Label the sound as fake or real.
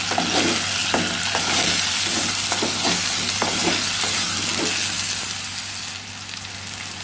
real